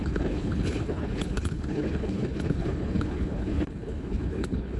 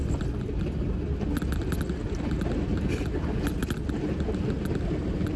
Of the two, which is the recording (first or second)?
second